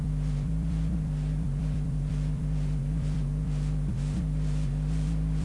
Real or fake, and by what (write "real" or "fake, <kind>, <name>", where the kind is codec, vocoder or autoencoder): fake, vocoder, BigVGAN v2